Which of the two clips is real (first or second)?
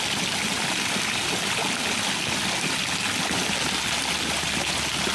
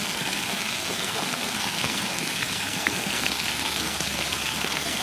first